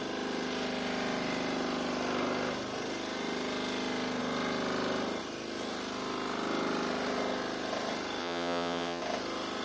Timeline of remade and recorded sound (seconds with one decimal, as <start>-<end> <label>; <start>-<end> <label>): 0.0-8.2 recorded; 8.2-9.0 remade; 9.0-9.6 recorded

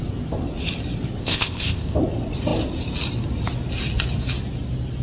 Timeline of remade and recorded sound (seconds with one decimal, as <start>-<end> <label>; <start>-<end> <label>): 0.0-1.2 recorded; 1.2-2.0 remade; 2.0-5.0 recorded

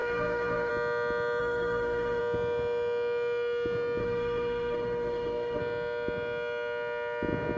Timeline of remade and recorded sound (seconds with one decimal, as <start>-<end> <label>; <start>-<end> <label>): 0.0-0.7 remade; 0.7-1.4 recorded; 1.4-2.2 remade; 2.2-4.0 recorded; 4.0-5.6 remade; 5.6-7.6 recorded

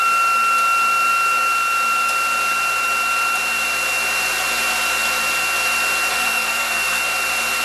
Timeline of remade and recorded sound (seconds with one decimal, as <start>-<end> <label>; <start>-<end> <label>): 0.0-6.1 recorded; 6.1-7.0 remade; 7.0-7.6 recorded